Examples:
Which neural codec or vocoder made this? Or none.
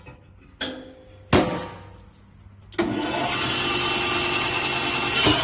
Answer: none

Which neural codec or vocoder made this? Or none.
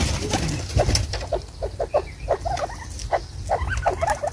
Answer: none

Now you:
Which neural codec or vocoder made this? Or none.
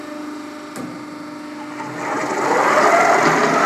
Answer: none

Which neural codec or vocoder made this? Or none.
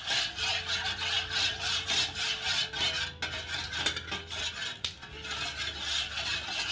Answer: none